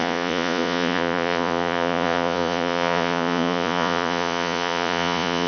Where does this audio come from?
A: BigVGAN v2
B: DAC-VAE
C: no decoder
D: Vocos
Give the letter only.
D